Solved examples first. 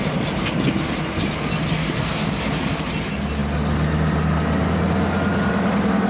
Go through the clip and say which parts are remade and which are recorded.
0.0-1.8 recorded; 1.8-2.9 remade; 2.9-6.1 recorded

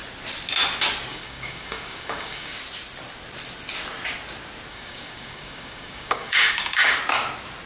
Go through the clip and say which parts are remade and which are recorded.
0.0-1.1 recorded; 1.1-2.5 remade; 2.5-4.7 recorded; 4.7-7.0 remade; 7.0-7.7 recorded